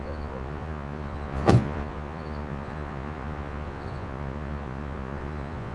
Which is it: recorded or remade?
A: remade